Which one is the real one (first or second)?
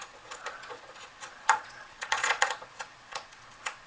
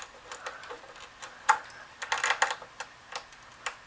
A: second